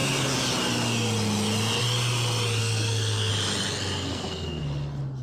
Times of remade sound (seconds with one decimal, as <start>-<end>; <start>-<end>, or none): 2.6-3.3; 4.1-4.6